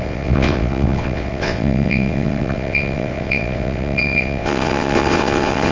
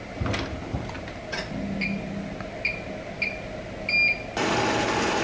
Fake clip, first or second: first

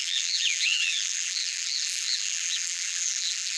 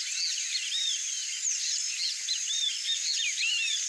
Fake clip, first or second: first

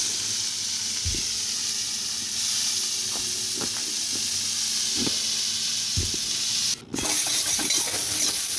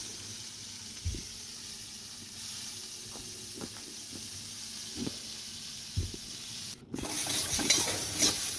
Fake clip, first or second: second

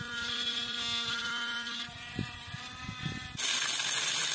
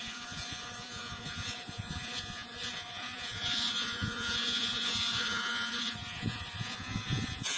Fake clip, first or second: second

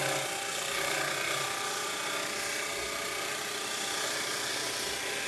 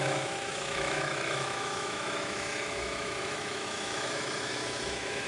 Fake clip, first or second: second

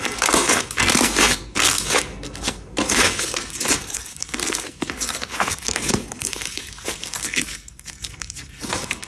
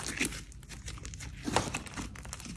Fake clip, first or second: first